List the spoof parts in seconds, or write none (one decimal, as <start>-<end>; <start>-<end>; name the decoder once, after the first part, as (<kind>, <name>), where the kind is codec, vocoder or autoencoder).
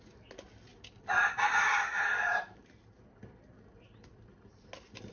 none